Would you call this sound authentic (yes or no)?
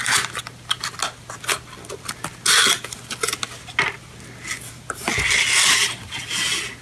yes